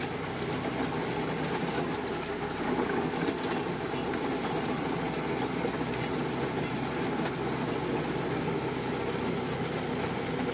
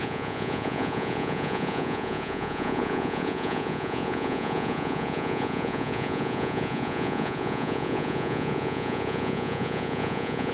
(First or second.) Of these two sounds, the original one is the first